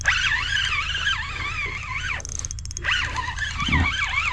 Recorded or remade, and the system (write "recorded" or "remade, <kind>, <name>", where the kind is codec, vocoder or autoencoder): recorded